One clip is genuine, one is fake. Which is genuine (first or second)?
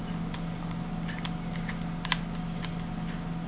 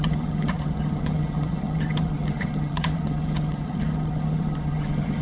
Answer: first